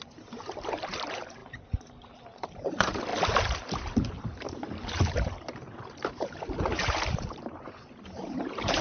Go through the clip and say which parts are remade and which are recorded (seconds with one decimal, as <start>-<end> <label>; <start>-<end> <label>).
0.0-3.1 remade; 3.1-4.2 recorded; 4.2-8.8 remade

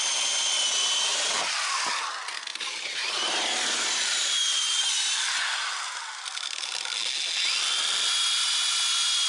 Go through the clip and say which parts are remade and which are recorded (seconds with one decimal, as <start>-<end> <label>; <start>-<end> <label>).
0.0-1.1 recorded; 1.1-1.7 remade; 1.7-2.5 recorded; 2.5-4.8 remade; 4.8-9.3 recorded

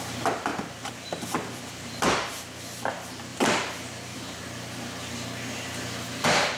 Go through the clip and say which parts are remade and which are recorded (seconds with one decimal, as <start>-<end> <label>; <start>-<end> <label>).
0.0-0.5 recorded; 0.5-2.9 remade; 2.9-3.3 recorded; 3.3-4.4 remade; 4.4-6.6 recorded

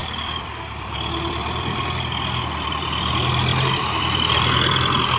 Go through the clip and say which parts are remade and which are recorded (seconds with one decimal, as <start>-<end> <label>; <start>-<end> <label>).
0.0-3.1 remade; 3.1-3.5 recorded; 3.5-5.2 remade

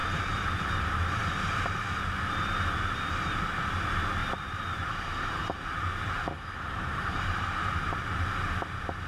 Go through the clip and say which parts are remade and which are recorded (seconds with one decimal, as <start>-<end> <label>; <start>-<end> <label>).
0.0-4.2 recorded; 4.2-8.3 remade; 8.3-9.1 recorded

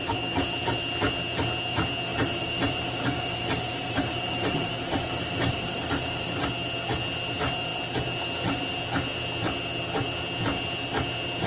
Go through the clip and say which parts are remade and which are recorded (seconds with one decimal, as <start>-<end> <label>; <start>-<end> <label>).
0.0-2.1 recorded; 2.1-6.5 remade; 6.5-11.5 recorded

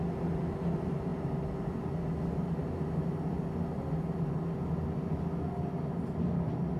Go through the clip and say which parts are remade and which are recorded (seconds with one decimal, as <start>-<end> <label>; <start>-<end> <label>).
0.0-6.8 recorded

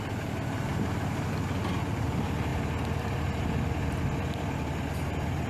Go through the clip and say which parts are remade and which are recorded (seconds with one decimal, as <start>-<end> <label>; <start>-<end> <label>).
0.0-5.5 recorded